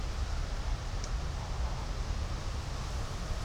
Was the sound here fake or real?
real